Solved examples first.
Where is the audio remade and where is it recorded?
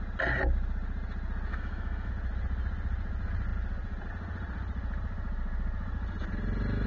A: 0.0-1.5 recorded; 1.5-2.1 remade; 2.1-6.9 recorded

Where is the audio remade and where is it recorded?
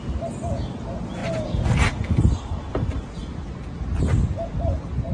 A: 0.0-5.1 recorded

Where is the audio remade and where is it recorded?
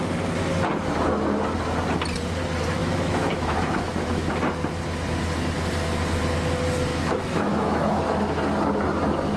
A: 0.0-2.8 recorded; 2.8-4.3 remade; 4.3-6.9 recorded; 6.9-8.0 remade; 8.0-9.4 recorded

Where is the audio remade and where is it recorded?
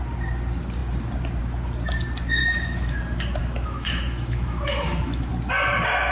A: 0.0-2.4 recorded; 2.4-3.0 remade; 3.0-3.4 recorded; 3.4-5.3 remade; 5.3-6.1 recorded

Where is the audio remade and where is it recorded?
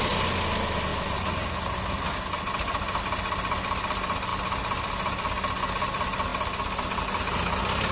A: 0.0-7.9 recorded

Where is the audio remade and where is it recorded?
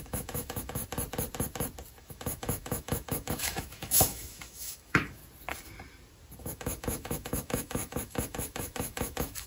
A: 0.0-0.8 remade; 0.8-2.0 recorded; 2.0-5.2 remade; 5.2-6.4 recorded; 6.4-9.5 remade